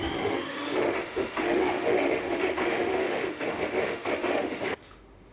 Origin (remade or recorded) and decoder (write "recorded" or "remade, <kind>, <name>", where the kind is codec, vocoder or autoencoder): remade, autoencoder, DAC-VAE